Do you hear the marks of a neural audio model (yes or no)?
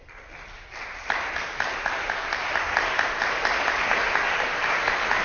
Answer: no